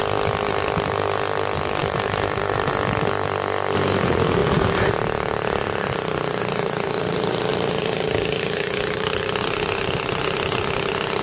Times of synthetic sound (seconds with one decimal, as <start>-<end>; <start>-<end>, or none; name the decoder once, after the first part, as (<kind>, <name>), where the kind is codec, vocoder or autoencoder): 1.8-2.7 (vocoder, BigVGAN v2); 7.5-9.4